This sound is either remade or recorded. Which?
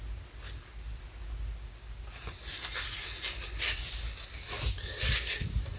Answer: recorded